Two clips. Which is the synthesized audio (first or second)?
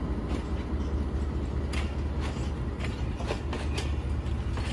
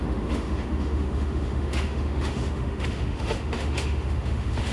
second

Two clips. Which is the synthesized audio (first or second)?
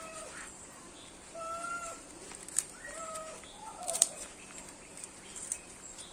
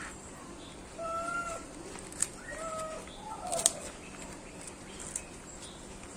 first